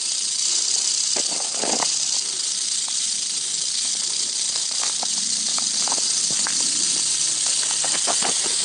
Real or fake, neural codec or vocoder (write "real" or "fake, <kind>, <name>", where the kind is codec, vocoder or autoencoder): real